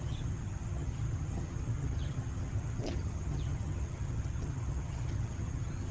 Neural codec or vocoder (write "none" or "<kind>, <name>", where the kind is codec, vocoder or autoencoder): vocoder, HiFi-GAN